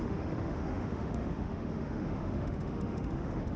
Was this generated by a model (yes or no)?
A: yes